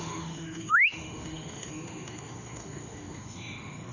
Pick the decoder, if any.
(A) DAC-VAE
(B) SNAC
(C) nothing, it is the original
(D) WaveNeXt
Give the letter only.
A